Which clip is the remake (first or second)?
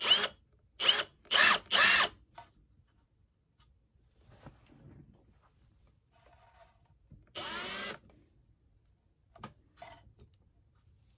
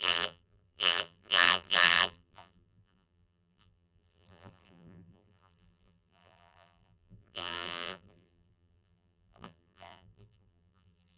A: second